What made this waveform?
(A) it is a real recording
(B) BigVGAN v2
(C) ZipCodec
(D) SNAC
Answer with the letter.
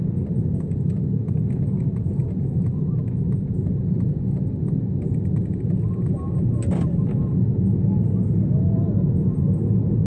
A